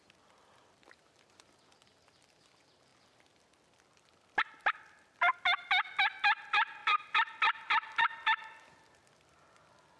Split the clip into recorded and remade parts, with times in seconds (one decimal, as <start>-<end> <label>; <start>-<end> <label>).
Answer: 0.0-10.0 recorded